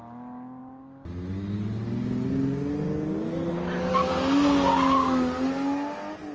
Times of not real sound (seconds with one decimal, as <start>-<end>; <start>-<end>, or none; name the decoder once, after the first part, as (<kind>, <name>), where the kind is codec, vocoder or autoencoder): none